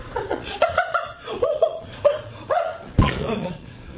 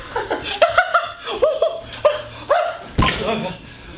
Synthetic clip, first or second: first